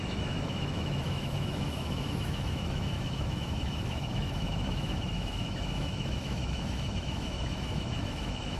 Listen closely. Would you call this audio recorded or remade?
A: remade